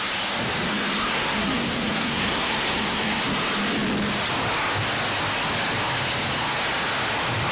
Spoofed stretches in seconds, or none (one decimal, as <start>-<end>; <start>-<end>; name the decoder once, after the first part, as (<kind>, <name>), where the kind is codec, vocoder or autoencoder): 1.1-3.2 (codec, SNAC)